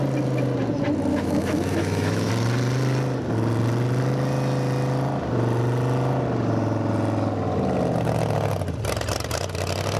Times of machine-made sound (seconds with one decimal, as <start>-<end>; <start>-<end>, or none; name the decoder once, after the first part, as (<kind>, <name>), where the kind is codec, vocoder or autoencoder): 1.1-2.3 (autoencoder, DAC-VAE)